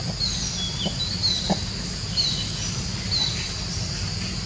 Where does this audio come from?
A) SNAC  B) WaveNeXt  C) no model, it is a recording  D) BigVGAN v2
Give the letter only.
D